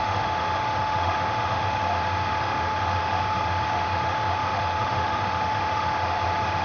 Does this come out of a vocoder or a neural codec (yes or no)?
yes